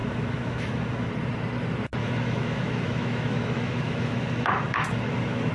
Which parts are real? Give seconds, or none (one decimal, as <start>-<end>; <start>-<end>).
1.1-2.0